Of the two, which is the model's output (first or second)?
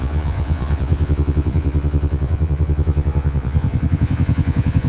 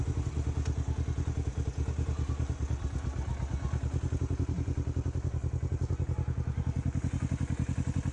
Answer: first